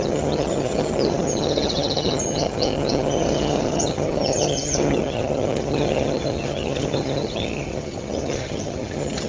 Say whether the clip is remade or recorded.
remade